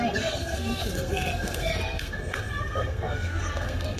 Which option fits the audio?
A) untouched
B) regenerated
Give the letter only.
B